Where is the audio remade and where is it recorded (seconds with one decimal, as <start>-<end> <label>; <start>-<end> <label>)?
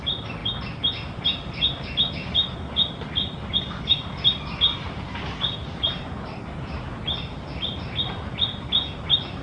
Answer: 0.0-9.4 recorded